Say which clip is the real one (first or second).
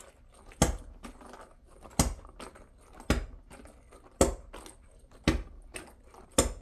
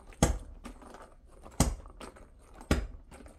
first